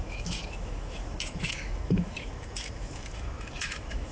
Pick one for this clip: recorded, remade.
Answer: remade